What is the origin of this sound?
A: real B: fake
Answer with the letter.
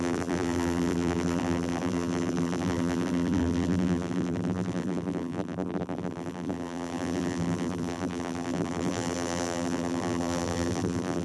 B